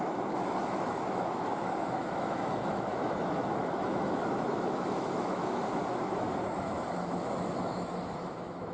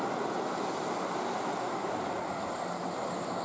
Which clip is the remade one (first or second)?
first